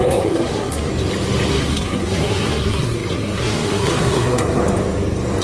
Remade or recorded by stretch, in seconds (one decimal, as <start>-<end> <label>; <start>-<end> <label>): 0.0-0.9 remade; 0.9-1.5 recorded; 1.5-4.6 remade; 4.6-5.4 recorded